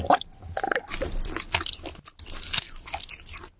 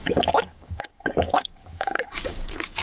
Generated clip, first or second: second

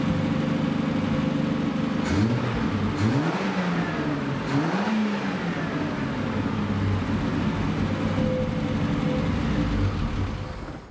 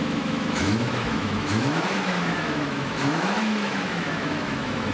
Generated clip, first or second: second